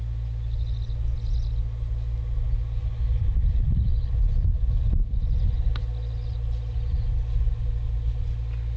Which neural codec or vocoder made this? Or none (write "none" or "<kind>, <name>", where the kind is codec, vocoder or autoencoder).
none